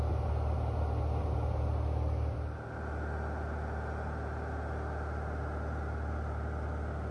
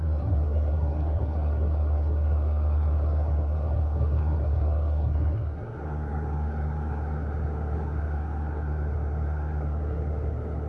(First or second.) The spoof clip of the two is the second